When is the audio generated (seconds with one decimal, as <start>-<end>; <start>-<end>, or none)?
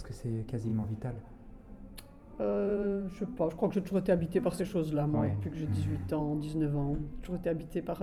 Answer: 0.0-6.2